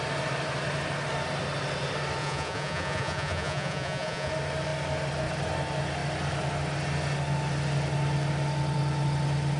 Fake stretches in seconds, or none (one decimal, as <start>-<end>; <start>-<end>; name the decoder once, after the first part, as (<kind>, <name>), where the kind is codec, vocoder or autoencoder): 2.2-4.3 (vocoder, Vocos)